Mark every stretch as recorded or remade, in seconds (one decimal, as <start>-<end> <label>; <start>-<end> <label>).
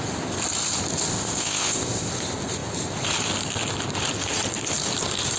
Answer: 0.0-1.1 recorded; 1.1-2.1 remade; 2.1-5.4 recorded